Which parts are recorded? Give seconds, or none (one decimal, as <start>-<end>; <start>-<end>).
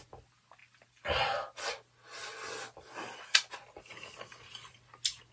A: 0.0-5.3